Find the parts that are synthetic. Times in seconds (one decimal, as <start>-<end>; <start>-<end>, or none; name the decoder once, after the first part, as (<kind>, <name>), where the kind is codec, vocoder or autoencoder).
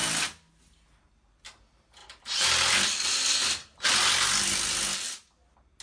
none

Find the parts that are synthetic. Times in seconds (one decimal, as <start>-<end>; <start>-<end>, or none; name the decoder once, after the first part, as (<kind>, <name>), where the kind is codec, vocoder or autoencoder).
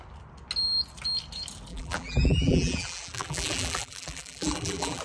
1.7-5.0 (vocoder, BigVGAN v2)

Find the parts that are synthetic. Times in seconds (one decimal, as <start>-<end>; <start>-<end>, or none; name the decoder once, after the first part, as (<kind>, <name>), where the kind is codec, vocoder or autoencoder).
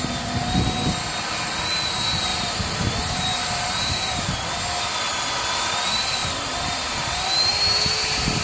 2.3-3.9 (vocoder, BigVGAN v2); 6.2-7.2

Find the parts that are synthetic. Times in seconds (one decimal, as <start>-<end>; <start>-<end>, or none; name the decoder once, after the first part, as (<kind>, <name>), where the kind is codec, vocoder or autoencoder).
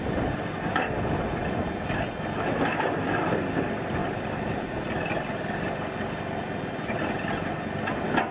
4.0-4.7 (vocoder, BigVGAN v2)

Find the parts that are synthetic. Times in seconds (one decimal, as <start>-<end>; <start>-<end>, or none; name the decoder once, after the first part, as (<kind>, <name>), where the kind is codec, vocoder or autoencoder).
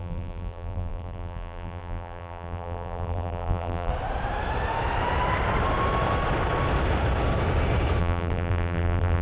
0.0-3.9 (vocoder, BigVGAN v2); 8.0-9.2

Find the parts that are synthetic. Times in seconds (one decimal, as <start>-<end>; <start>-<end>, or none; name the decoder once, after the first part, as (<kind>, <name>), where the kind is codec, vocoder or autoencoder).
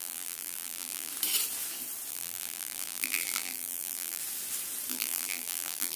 0.0-1.1 (vocoder, BigVGAN v2); 2.1-4.2; 4.9-6.0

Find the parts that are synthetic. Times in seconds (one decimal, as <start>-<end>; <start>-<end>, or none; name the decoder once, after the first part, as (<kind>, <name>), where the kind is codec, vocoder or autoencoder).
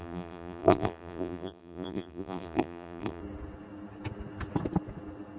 0.0-3.2 (vocoder, BigVGAN v2)